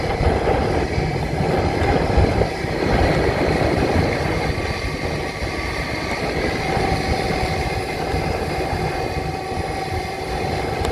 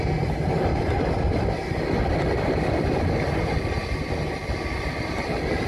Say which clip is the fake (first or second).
first